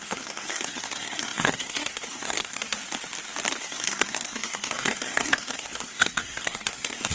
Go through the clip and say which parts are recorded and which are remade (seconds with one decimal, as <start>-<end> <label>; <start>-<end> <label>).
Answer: 0.0-2.8 remade; 2.8-3.6 recorded; 3.6-7.1 remade